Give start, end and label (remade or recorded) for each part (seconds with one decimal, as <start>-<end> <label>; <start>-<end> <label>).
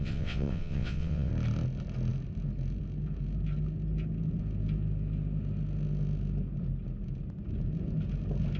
0.0-1.3 remade; 1.3-8.6 recorded